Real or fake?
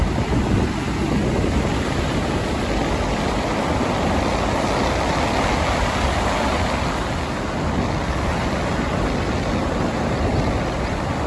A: real